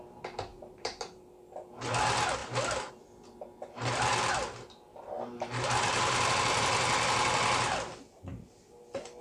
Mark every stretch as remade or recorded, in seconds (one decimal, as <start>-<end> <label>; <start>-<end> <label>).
0.0-0.5 recorded; 0.5-1.2 remade; 1.2-2.4 recorded; 2.4-2.9 remade; 2.9-4.9 recorded; 4.9-6.3 remade; 6.3-9.2 recorded